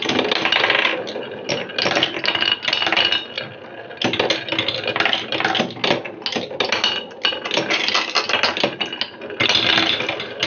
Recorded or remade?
recorded